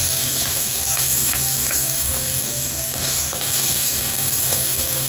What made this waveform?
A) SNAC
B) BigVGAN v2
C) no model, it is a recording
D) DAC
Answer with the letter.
D